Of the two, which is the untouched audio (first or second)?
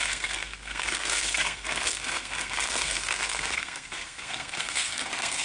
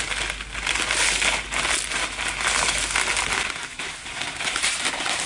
second